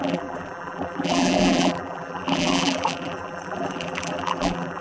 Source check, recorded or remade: remade